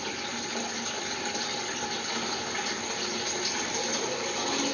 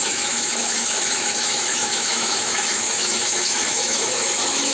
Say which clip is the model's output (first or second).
second